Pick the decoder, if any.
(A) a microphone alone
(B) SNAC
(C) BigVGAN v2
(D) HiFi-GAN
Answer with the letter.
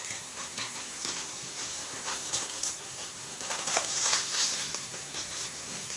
B